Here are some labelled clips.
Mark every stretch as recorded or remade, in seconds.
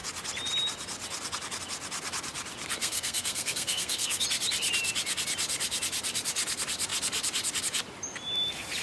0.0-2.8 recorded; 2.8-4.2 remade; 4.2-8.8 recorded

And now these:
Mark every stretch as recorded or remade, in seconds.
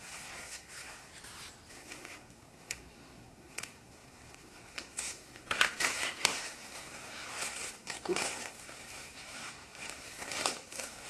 0.0-1.1 remade; 1.1-1.7 recorded; 1.7-11.1 remade